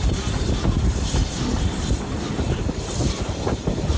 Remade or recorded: remade